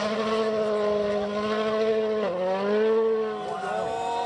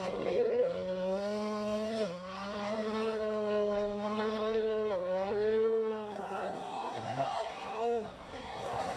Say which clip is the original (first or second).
first